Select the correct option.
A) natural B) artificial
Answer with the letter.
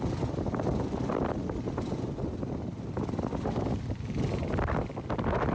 A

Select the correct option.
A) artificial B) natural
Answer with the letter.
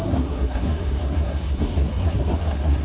A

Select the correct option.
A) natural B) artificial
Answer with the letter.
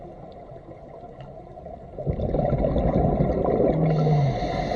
A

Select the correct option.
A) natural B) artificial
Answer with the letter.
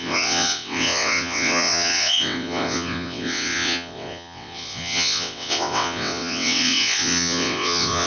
B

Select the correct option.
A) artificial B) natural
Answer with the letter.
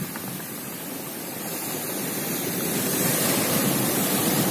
B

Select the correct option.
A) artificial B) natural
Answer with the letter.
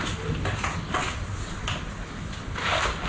B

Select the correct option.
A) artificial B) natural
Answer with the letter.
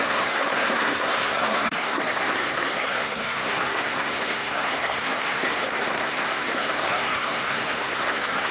A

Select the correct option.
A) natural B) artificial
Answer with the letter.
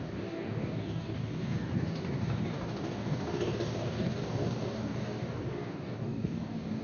B